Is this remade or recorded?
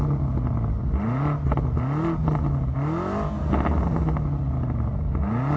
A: recorded